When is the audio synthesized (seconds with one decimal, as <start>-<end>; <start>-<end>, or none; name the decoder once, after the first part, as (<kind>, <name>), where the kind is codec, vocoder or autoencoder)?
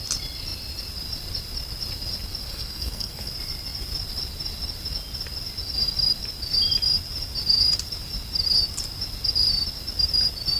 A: 2.4-3.3 (codec, SNAC)